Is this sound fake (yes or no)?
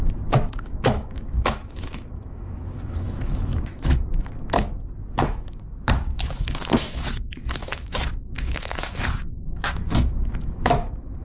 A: yes